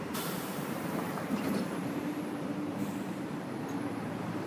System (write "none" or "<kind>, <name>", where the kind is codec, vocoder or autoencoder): vocoder, BigVGAN v2